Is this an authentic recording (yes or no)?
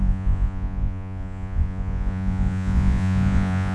no